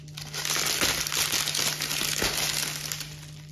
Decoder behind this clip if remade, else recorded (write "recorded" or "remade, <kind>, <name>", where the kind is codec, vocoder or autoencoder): recorded